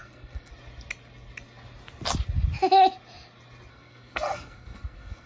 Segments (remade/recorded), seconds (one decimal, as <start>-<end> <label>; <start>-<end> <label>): 0.0-0.5 remade; 0.5-3.7 recorded; 3.7-5.3 remade